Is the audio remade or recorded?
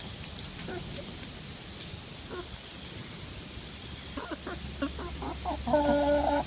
recorded